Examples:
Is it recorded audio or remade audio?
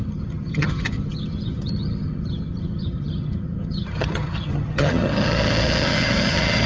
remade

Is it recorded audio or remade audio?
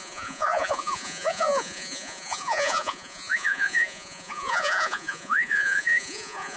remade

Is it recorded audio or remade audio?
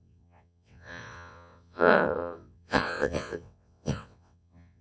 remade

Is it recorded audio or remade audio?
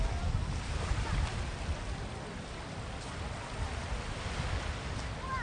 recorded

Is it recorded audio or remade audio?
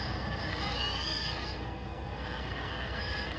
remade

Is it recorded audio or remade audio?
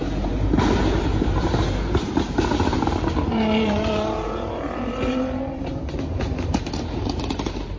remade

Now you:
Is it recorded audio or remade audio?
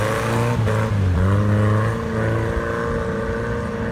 recorded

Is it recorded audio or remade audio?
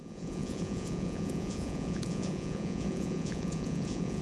remade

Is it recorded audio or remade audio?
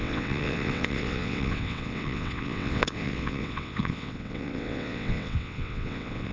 remade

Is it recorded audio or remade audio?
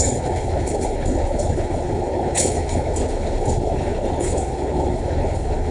remade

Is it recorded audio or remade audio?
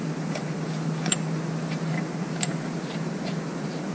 recorded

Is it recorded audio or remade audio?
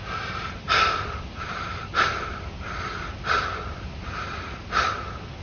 recorded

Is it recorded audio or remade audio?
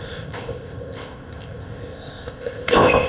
remade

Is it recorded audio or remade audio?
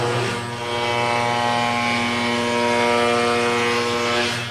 recorded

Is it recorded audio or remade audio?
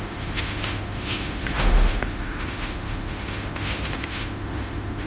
remade